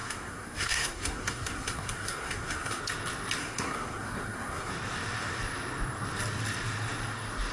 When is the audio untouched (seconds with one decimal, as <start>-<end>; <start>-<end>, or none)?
2.8-3.4; 4.7-7.5